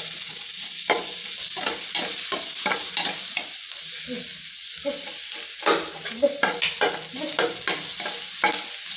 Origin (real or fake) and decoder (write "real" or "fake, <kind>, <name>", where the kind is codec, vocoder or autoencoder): real